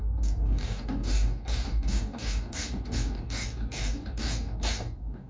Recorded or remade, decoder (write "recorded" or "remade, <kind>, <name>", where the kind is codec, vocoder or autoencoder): remade, codec, DAC